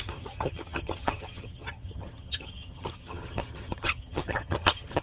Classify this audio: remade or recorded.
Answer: remade